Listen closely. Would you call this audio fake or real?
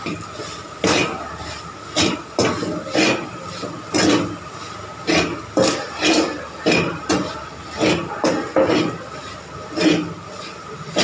real